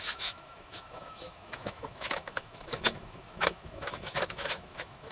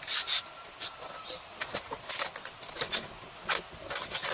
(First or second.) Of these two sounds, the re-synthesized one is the first